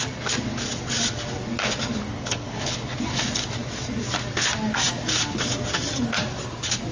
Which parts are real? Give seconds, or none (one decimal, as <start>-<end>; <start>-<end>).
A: 0.0-2.1; 2.9-6.9